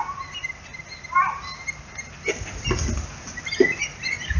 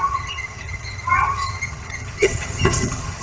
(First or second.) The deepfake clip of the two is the second